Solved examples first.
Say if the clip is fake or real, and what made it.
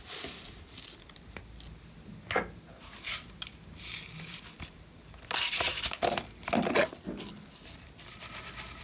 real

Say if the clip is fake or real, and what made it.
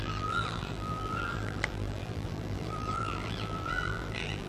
fake, vocoder, BigVGAN v2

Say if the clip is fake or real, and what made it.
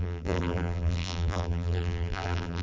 fake, vocoder, BigVGAN v2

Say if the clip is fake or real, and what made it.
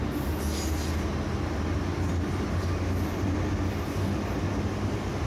real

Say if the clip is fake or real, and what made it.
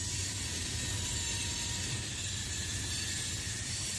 fake, vocoder, BigVGAN v2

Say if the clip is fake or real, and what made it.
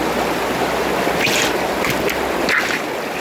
real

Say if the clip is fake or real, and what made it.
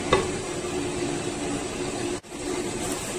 real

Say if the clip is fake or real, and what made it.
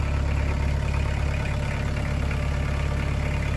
real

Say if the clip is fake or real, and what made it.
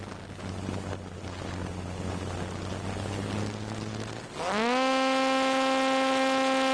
real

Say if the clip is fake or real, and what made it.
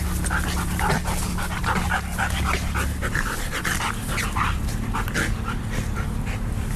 real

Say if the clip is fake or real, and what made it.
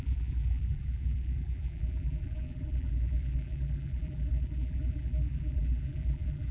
fake, vocoder, BigVGAN v2